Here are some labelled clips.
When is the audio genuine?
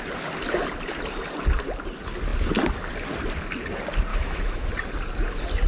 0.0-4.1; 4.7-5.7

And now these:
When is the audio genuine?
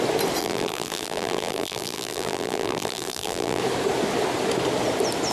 0.0-0.4; 3.6-5.3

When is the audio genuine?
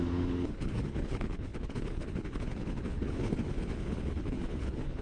none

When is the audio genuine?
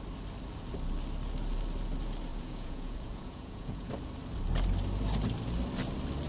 0.0-2.3; 3.9-6.3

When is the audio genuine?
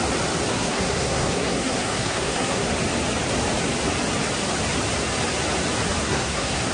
0.0-0.5; 2.7-6.0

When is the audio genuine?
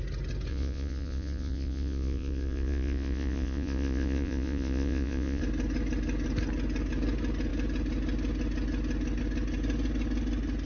0.0-0.5; 5.4-10.7